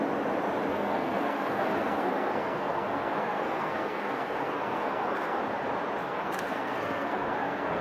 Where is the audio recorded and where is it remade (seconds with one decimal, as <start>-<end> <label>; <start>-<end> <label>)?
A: 0.0-0.7 recorded; 0.7-5.4 remade; 5.4-6.0 recorded; 6.0-7.8 remade